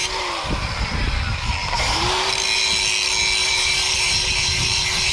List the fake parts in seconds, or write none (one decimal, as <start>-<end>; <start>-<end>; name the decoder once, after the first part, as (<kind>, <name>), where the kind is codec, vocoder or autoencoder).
1.6-2.3 (vocoder, BigVGAN v2); 3.4-5.1